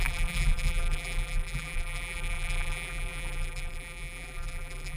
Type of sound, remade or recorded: remade